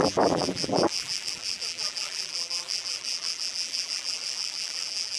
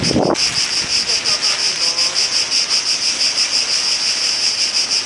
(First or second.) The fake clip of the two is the first